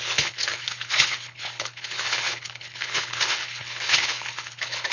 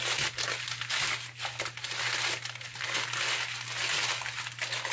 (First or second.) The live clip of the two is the second